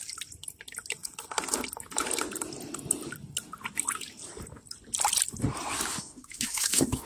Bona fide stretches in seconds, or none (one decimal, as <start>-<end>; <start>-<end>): 0.0-5.9